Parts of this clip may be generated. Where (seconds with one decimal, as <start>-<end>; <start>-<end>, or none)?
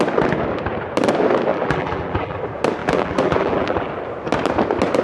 1.5-2.4; 2.8-3.9